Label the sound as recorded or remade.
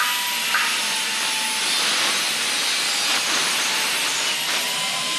recorded